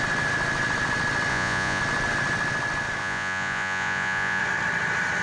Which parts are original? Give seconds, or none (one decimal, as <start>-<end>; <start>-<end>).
0.0-1.3; 1.8-3.0; 4.4-5.2